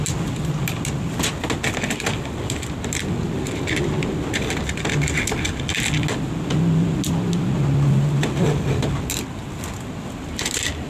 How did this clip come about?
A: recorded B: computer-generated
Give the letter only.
A